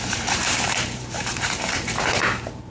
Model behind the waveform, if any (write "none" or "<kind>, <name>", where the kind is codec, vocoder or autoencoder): vocoder, BigVGAN v2